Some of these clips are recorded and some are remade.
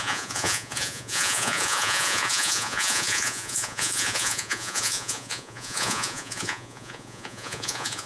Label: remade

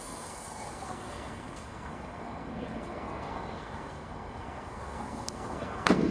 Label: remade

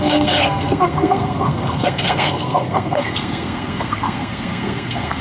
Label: remade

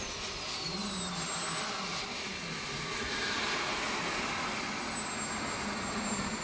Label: recorded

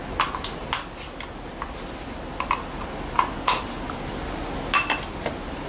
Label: recorded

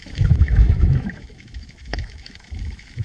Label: remade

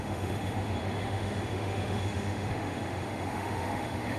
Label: remade